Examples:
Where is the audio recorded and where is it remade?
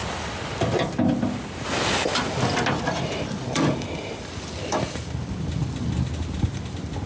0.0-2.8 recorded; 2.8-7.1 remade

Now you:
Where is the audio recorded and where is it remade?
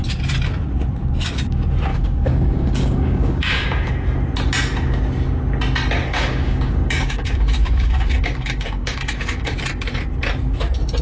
0.0-1.9 recorded; 1.9-3.9 remade; 3.9-6.0 recorded; 6.0-9.5 remade; 9.5-11.0 recorded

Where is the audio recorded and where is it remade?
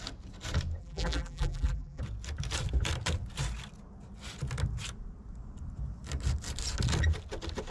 0.0-0.8 recorded; 0.8-2.0 remade; 2.0-7.7 recorded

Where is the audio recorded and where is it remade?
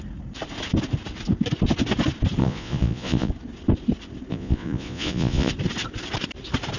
0.0-2.4 recorded; 2.4-3.3 remade; 3.3-4.3 recorded; 4.3-5.5 remade; 5.5-6.8 recorded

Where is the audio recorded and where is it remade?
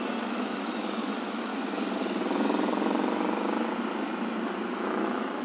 0.0-1.5 remade; 1.5-4.7 recorded; 4.7-5.4 remade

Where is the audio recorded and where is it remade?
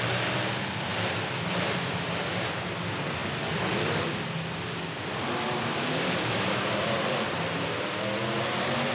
0.0-8.9 recorded